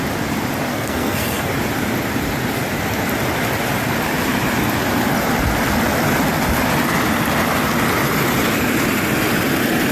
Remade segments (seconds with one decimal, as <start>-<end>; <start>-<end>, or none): 0.7-1.5